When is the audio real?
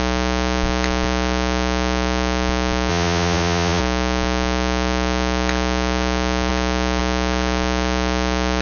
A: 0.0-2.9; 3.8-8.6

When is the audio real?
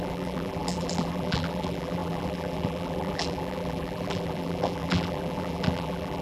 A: none